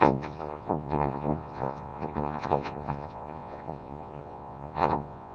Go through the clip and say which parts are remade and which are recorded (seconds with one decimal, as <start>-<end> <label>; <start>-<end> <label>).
0.0-5.3 remade